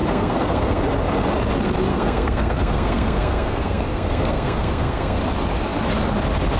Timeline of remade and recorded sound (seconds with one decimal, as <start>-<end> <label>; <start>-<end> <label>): 0.0-0.8 remade; 0.8-1.9 recorded; 1.9-5.2 remade; 5.2-6.6 recorded